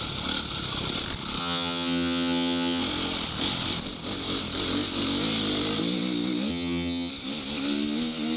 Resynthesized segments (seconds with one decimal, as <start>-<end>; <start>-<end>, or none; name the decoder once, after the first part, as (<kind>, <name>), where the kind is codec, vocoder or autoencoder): 1.4-2.8 (vocoder, HiFi-GAN); 6.5-7.1